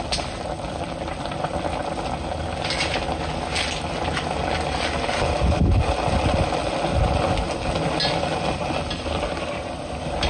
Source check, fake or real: real